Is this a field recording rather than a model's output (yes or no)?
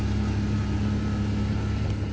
yes